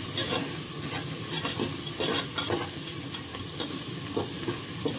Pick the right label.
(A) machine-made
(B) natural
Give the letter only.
B